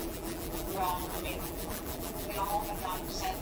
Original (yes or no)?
no